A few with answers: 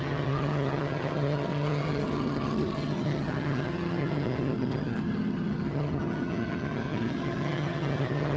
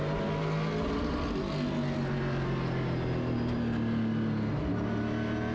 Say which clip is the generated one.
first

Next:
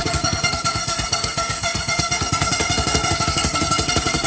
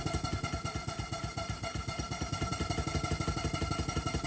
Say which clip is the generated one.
first